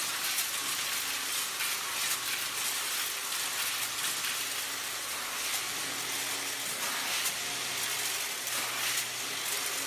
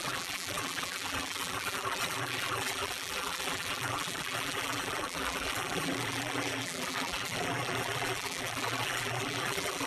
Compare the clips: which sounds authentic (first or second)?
first